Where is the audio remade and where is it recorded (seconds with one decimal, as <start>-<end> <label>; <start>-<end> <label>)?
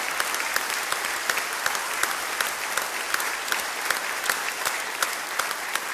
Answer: 0.0-5.9 recorded